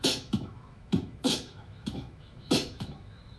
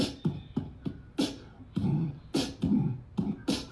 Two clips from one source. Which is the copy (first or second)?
first